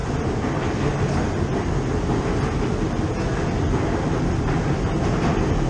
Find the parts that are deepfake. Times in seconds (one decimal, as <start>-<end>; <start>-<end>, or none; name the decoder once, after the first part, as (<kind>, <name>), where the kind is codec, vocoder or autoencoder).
none